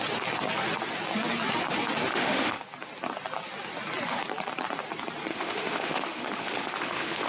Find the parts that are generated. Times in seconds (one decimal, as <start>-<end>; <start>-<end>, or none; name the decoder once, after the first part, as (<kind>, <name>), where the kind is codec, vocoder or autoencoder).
2.1-2.6 (autoencoder, DAC-VAE); 5.3-7.3